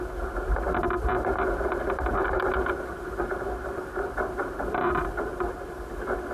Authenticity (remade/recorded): recorded